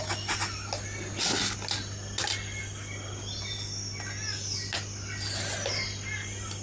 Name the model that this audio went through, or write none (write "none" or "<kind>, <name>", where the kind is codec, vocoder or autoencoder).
none